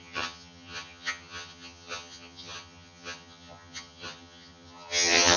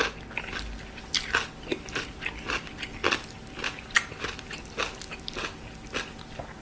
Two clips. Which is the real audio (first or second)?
second